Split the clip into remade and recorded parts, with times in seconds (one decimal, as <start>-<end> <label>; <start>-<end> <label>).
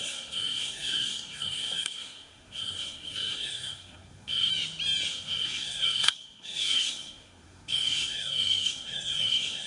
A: 0.0-4.5 remade; 4.5-5.1 recorded; 5.1-9.7 remade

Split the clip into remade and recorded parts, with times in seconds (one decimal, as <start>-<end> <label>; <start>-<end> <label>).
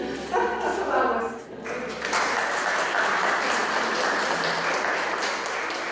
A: 0.0-5.9 recorded